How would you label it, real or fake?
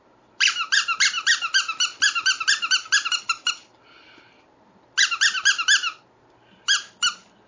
real